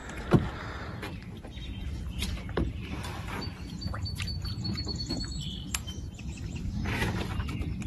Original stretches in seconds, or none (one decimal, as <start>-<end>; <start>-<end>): 1.3-2.8; 6.7-7.9